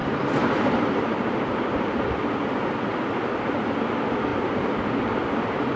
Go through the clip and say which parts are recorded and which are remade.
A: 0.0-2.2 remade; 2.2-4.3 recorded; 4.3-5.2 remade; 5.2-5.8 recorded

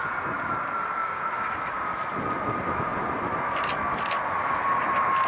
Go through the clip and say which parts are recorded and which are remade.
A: 0.0-1.0 recorded; 1.0-1.5 remade; 1.5-5.3 recorded

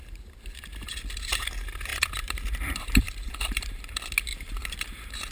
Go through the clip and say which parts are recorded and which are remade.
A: 0.0-1.9 recorded; 1.9-3.8 remade; 3.8-4.3 recorded; 4.3-5.3 remade

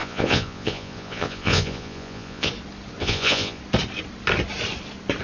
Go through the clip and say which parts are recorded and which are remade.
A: 0.0-2.5 remade; 2.5-3.0 recorded; 3.0-3.6 remade; 3.6-5.2 recorded

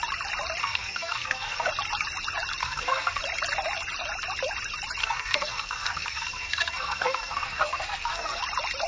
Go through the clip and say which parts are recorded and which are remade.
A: 0.0-0.6 recorded; 0.6-1.7 remade; 1.7-2.6 recorded; 2.6-3.2 remade; 3.2-5.0 recorded; 5.0-8.4 remade; 8.4-8.9 recorded

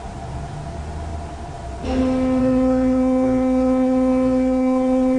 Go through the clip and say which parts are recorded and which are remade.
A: 0.0-2.4 recorded; 2.4-5.2 remade